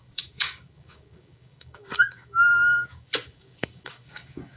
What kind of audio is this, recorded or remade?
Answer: remade